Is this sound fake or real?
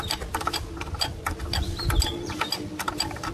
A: real